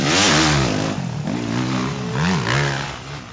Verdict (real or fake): real